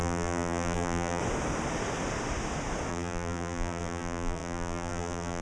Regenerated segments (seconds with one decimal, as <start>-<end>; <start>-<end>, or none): 0.0-1.2; 2.9-5.4